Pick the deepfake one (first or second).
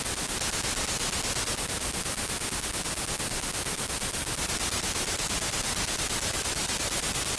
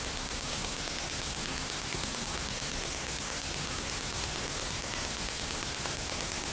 second